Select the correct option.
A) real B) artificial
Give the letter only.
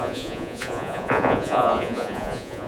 B